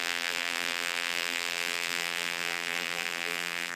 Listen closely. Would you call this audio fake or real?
fake